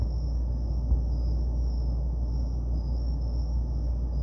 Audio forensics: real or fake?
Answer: real